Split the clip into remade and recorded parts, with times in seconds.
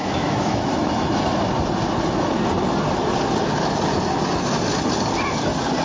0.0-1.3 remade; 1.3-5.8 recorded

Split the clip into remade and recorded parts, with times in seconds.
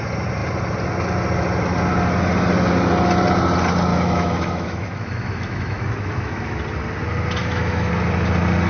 0.0-3.9 recorded; 3.9-6.6 remade; 6.6-7.4 recorded; 7.4-7.9 remade; 7.9-8.7 recorded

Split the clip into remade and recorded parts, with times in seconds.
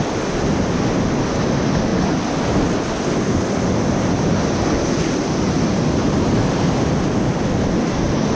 0.0-8.3 recorded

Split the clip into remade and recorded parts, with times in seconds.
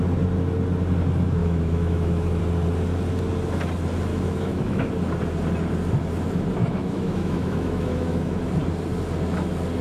0.0-1.4 recorded; 1.4-2.4 remade; 2.4-4.1 recorded; 4.1-4.9 remade; 4.9-6.6 recorded; 6.6-8.4 remade; 8.4-9.8 recorded